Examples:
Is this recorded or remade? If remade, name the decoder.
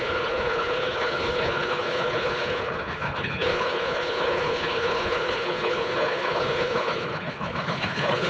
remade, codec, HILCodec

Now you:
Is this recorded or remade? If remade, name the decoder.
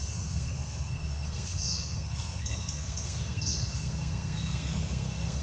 remade, codec, SNAC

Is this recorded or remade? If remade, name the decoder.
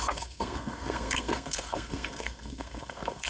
remade, codec, SNAC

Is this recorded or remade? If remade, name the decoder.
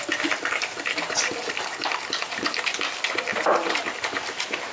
recorded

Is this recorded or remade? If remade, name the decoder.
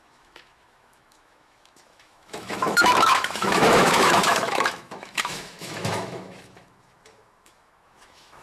remade, autoencoder, DAC-VAE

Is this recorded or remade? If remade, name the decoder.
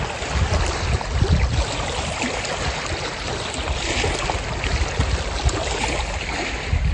recorded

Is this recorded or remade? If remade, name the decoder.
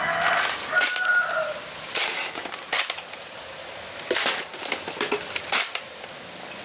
recorded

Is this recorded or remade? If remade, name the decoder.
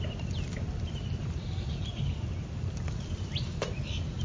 remade, vocoder, BigVGAN v2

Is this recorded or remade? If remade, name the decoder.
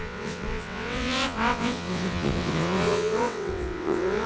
remade, vocoder, WaveNeXt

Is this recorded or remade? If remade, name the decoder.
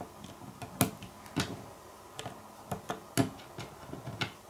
recorded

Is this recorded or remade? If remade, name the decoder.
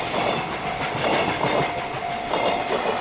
recorded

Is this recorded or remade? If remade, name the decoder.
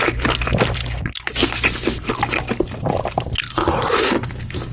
recorded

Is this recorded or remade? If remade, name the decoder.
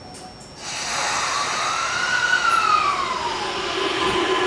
recorded